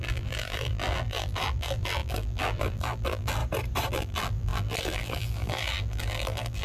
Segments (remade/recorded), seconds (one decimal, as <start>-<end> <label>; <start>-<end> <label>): 0.0-3.4 remade; 3.4-3.9 recorded; 3.9-6.6 remade